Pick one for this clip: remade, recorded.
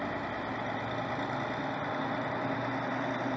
recorded